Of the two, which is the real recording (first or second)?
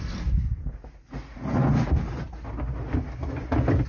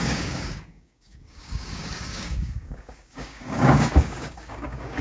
first